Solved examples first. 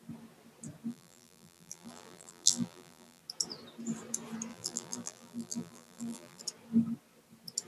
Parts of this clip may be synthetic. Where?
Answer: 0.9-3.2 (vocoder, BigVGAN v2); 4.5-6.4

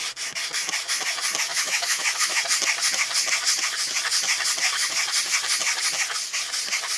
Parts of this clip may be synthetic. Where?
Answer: 1.5-2.4 (autoencoder, DAC-VAE)

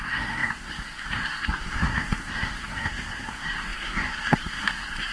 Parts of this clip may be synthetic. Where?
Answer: 0.0-5.1 (codec, SNAC)

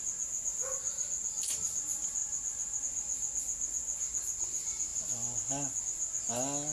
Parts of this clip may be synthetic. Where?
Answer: none

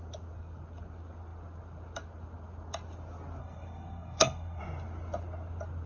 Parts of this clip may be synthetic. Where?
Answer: 3.4-4.6 (codec, SNAC)

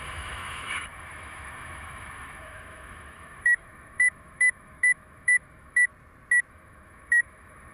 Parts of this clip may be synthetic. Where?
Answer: 0.0-5.9 (autoencoder, DAC-VAE); 6.5-7.7

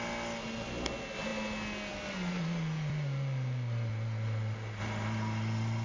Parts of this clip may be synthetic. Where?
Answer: none